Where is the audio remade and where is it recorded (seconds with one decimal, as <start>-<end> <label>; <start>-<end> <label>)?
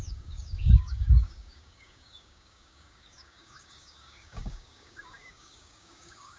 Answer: 0.0-6.4 remade